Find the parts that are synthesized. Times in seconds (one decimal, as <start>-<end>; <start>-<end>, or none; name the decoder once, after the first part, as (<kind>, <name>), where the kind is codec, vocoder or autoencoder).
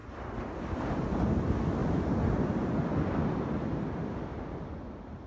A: 1.8-5.3 (vocoder, BigVGAN v2)